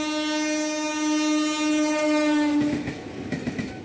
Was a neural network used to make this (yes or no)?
no